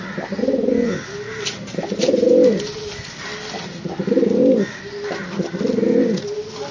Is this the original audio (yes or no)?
yes